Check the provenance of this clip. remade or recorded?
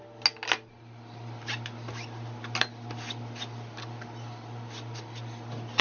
recorded